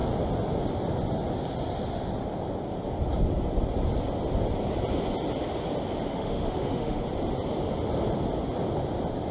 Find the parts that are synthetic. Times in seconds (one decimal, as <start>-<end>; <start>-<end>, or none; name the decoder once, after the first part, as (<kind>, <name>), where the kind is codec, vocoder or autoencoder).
6.1-7.0 (autoencoder, DAC-VAE)

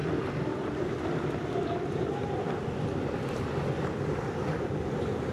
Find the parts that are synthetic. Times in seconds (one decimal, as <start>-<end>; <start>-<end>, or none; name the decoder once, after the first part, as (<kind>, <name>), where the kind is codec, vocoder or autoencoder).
0.0-0.9 (vocoder, BigVGAN v2)